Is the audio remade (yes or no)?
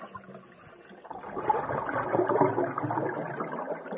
no